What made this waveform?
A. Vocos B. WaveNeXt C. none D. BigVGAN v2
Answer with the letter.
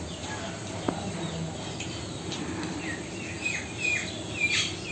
D